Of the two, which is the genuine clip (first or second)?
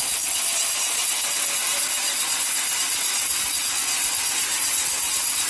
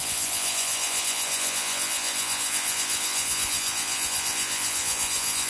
first